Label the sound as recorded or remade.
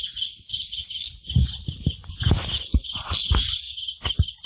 recorded